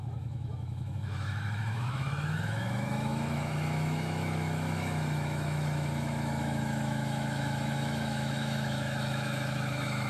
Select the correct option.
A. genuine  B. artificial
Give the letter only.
B